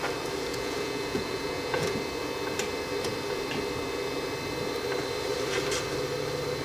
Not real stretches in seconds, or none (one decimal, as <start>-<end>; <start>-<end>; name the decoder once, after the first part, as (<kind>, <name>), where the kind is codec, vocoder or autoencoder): 0.5-2.0 (vocoder, Vocos)